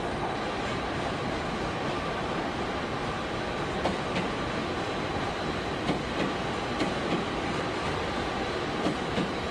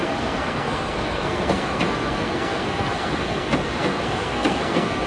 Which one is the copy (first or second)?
second